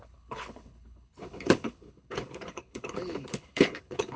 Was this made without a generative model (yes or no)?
no